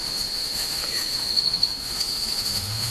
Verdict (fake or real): fake